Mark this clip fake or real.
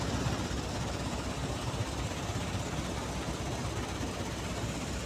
real